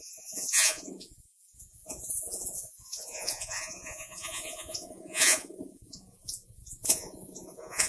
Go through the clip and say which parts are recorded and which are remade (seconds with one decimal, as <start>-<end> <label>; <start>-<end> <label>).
0.0-7.9 remade